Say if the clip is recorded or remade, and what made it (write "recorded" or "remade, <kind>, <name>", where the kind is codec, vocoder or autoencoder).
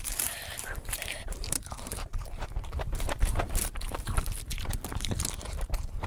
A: remade, vocoder, BigVGAN v2